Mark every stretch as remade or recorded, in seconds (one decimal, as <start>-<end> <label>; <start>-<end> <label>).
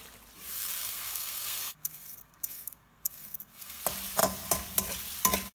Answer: 0.0-0.5 recorded; 0.5-3.8 remade; 3.8-5.5 recorded